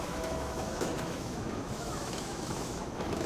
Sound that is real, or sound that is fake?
fake